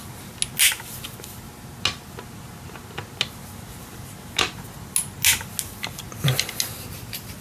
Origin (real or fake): real